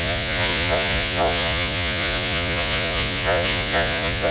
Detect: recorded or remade remade